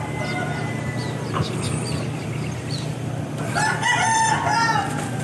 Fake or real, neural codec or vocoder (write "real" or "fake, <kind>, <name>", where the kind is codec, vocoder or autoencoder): real